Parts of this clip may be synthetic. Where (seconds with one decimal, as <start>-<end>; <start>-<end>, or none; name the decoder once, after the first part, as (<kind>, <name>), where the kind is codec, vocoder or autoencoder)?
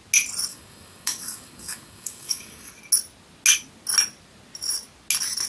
0.5-2.7 (codec, DAC)